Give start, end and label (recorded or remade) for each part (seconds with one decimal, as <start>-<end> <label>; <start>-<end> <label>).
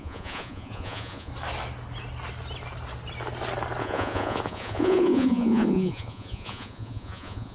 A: 0.0-1.3 remade; 1.3-3.8 recorded; 3.8-7.5 remade